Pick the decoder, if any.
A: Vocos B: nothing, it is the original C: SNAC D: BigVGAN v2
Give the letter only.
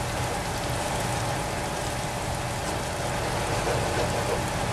B